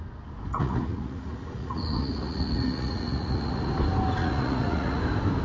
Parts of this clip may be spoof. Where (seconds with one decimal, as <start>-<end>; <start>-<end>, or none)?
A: 0.5-3.7; 4.2-5.0